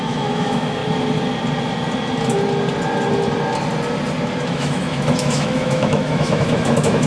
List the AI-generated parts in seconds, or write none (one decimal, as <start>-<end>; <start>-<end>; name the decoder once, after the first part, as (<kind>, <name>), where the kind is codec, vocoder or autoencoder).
0.0-0.8 (autoencoder, DAC-VAE); 4.5-7.1